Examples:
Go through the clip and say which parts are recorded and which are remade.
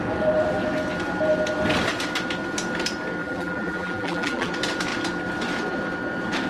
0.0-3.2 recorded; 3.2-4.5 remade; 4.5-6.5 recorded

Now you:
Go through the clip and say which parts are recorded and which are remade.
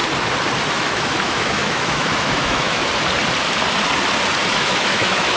0.0-0.7 recorded; 0.7-2.8 remade; 2.8-4.5 recorded; 4.5-5.4 remade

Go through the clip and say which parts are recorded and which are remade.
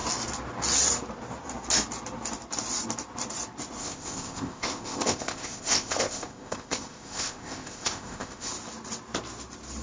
0.0-3.8 recorded; 3.8-8.5 remade; 8.5-9.8 recorded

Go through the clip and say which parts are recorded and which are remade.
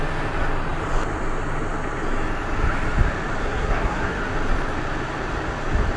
0.0-3.4 recorded; 3.4-4.2 remade; 4.2-6.0 recorded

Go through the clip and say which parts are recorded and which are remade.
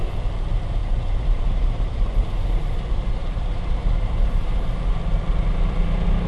0.0-0.8 recorded; 0.8-4.6 remade; 4.6-6.3 recorded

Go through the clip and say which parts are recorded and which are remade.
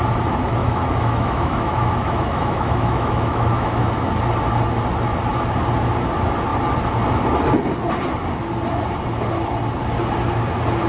0.0-0.6 recorded; 0.6-3.9 remade; 3.9-10.9 recorded